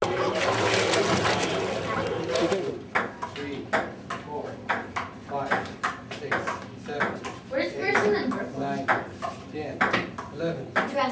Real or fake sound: real